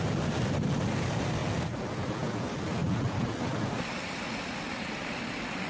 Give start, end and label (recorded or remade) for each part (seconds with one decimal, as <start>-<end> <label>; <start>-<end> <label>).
0.0-5.7 recorded